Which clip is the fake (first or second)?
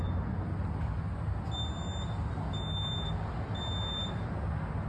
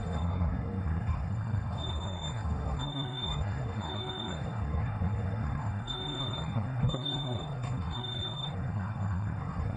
second